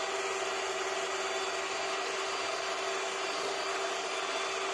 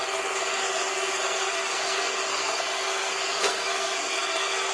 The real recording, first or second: first